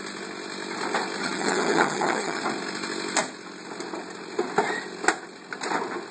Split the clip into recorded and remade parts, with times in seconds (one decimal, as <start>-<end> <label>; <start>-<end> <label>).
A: 0.0-1.2 recorded; 1.2-2.4 remade; 2.4-6.1 recorded